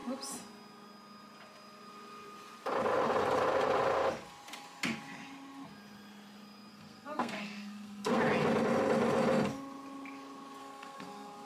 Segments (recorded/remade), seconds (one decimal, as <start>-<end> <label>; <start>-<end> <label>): 0.0-6.7 recorded; 6.7-8.2 remade; 8.2-10.6 recorded; 10.6-11.5 remade